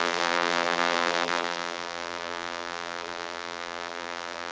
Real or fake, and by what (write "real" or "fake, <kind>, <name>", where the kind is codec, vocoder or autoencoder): fake, vocoder, BigVGAN v2